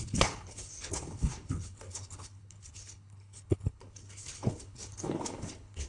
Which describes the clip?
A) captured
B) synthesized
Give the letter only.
B